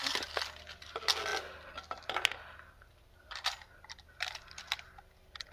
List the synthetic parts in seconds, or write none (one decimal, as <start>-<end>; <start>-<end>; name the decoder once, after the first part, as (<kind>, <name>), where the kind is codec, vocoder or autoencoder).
none